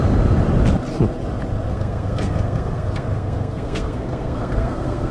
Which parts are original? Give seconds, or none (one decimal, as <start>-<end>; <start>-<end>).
0.0-1.7